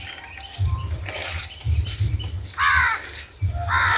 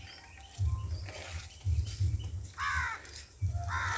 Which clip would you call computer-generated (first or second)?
first